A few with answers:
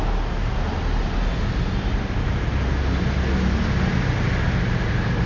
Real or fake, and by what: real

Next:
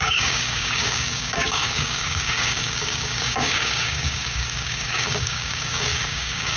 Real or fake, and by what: fake, codec, DAC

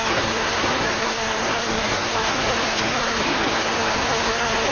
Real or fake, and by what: fake, codec, SNAC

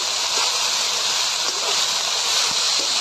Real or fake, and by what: real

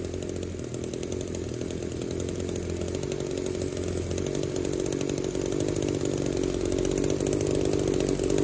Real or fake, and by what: real